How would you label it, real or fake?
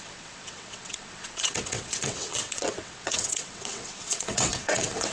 fake